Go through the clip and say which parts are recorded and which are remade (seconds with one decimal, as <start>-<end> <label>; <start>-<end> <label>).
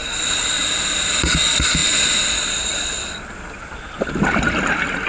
0.0-5.1 recorded